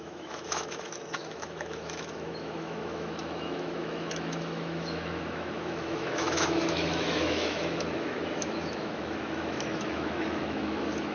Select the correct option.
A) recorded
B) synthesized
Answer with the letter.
B